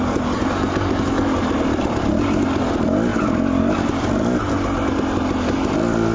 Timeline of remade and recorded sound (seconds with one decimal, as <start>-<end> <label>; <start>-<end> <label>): 0.0-6.1 recorded

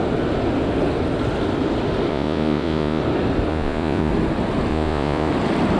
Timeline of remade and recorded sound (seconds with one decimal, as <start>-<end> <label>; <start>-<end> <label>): 0.0-2.1 recorded; 2.1-3.0 remade; 3.0-3.5 recorded; 3.5-4.1 remade; 4.1-4.7 recorded; 4.7-5.3 remade; 5.3-5.8 recorded

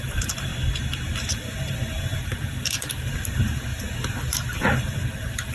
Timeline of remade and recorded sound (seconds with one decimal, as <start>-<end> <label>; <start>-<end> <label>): 0.0-0.5 remade; 0.5-1.3 recorded; 1.3-5.5 remade

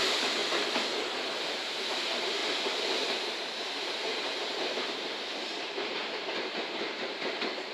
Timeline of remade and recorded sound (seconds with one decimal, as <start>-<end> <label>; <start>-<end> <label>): 0.0-0.4 remade; 0.4-1.6 recorded; 1.6-2.4 remade; 2.4-3.0 recorded; 3.0-6.0 remade; 6.0-6.5 recorded; 6.5-7.7 remade

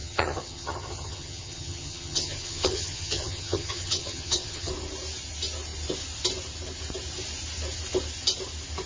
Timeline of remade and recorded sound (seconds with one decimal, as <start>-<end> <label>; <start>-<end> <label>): 0.0-4.7 remade; 4.7-8.9 recorded

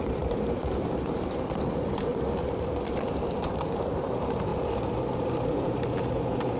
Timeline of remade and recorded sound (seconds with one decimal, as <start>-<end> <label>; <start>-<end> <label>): 0.0-2.1 remade; 2.1-3.3 recorded; 3.3-4.5 remade; 4.5-5.2 recorded; 5.2-6.6 remade

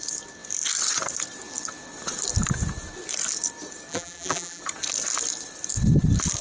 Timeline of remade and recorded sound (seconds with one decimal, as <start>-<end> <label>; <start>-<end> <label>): 0.0-3.9 recorded; 3.9-4.6 remade; 4.6-6.4 recorded